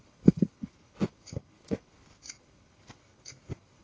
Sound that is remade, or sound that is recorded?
remade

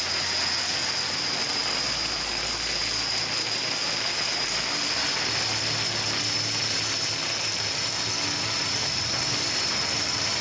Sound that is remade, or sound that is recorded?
recorded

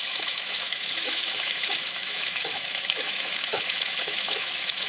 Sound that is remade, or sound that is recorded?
remade